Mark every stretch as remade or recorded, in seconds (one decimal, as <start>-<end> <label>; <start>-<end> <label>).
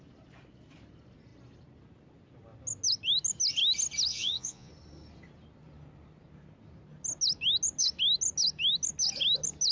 0.0-4.1 recorded; 4.1-4.7 remade; 4.7-9.7 recorded